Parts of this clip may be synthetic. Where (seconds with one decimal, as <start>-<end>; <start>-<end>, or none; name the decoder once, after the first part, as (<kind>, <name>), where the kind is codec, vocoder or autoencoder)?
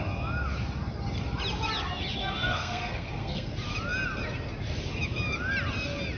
2.2-3.5 (codec, SNAC)